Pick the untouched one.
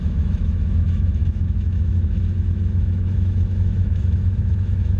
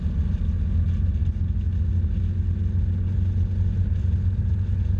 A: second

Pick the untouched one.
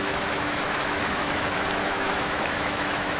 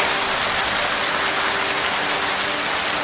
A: second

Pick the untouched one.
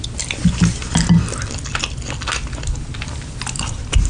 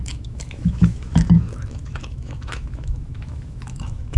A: first